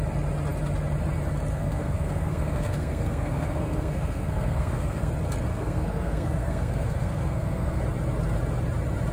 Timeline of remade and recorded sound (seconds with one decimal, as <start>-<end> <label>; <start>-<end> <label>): 0.0-1.5 recorded; 1.5-5.1 remade; 5.1-5.5 recorded; 5.5-7.8 remade; 7.8-9.1 recorded